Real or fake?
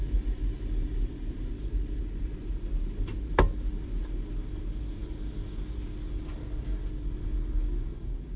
real